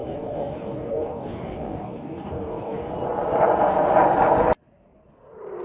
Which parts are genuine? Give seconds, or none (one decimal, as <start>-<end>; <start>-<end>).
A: 2.9-5.6